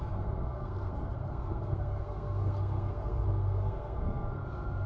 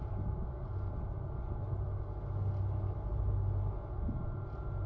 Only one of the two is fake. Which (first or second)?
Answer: first